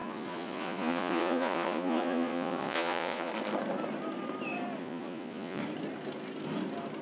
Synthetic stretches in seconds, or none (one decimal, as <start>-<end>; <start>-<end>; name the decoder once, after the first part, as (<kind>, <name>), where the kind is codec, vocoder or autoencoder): 0.0-3.3 (vocoder, Vocos); 4.8-5.6